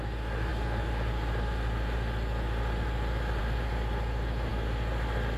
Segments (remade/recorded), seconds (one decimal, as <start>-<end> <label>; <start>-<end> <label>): 0.0-5.4 recorded